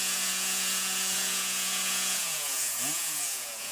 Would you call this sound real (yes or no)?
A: no